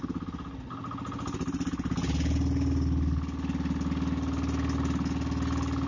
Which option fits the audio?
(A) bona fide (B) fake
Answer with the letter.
A